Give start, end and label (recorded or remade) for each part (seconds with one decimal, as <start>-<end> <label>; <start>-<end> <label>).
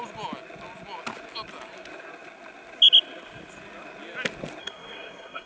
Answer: 0.0-4.6 recorded; 4.6-5.5 remade